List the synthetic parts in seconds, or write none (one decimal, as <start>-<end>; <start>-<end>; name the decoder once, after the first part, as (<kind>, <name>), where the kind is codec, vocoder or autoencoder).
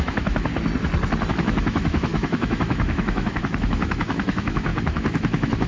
0.0-0.5 (autoencoder, DAC-VAE); 1.3-5.7